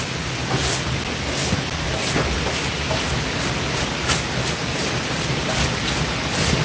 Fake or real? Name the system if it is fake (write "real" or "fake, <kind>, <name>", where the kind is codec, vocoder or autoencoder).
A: real